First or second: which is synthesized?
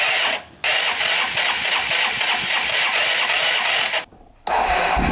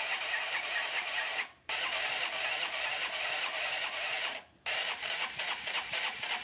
second